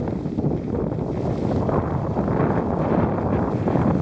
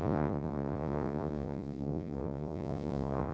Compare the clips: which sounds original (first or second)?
first